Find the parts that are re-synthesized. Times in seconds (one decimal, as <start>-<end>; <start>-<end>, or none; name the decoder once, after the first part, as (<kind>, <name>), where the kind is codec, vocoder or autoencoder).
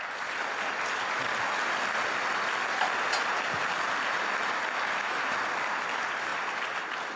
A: none